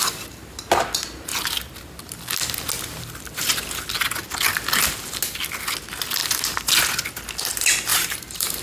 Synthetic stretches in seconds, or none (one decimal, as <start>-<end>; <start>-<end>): 7.9-8.6